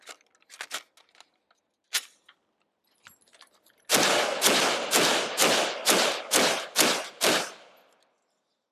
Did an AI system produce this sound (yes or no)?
no